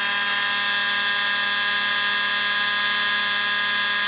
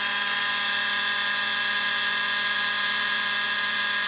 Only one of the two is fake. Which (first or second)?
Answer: second